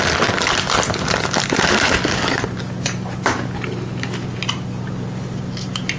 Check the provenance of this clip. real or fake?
real